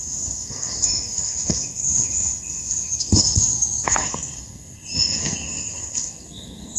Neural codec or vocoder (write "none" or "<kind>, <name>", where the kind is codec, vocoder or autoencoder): codec, SNAC